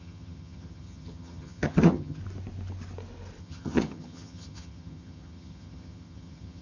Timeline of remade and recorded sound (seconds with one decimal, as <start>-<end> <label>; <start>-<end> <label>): 0.0-2.2 remade; 2.2-3.4 recorded; 3.4-6.6 remade

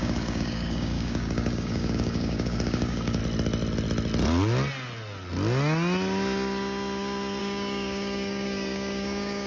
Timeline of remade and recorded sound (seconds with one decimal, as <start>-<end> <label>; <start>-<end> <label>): 0.0-3.2 remade; 3.2-7.4 recorded; 7.4-9.5 remade

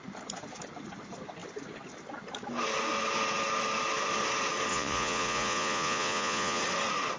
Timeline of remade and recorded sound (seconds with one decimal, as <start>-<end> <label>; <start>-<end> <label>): 0.0-4.7 recorded; 4.7-6.6 remade; 6.6-7.2 recorded

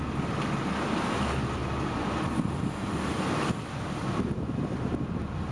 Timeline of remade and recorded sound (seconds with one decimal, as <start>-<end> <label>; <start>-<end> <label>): 0.0-5.5 recorded

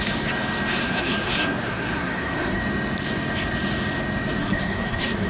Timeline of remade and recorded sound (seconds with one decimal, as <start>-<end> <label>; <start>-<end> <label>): 0.0-0.8 recorded; 0.8-2.6 remade; 2.6-4.4 recorded; 4.4-5.3 remade